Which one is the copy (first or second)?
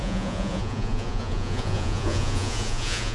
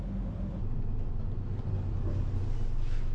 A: first